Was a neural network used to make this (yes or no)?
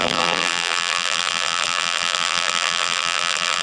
yes